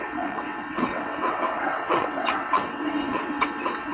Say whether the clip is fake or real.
fake